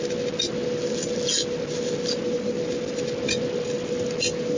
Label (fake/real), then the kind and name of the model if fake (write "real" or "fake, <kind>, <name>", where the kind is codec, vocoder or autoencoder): real